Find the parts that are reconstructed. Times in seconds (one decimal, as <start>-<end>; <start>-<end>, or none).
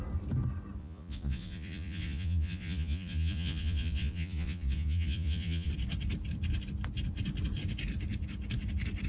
0.8-5.7